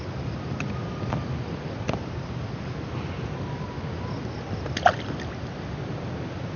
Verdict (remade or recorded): recorded